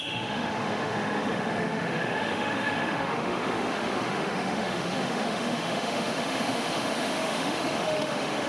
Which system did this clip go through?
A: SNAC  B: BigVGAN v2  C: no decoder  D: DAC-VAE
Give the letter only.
D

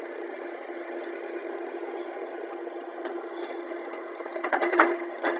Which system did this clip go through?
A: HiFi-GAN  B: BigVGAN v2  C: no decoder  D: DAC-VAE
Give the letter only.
A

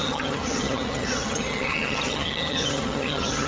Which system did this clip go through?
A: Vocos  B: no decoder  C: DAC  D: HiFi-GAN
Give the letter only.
D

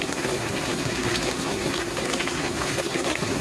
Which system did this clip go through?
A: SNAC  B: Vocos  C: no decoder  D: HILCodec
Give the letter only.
A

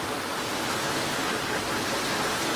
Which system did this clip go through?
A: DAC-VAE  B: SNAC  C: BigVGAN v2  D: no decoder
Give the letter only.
D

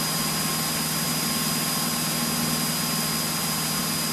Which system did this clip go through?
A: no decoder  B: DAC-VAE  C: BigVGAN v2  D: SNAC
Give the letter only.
A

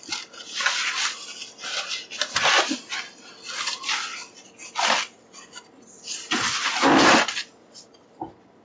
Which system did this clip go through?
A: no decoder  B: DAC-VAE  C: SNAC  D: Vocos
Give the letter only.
A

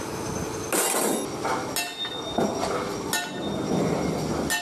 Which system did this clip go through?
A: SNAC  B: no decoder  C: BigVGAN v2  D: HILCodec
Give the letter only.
B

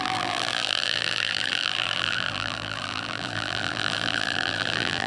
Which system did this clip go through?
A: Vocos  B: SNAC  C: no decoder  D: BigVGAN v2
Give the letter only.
D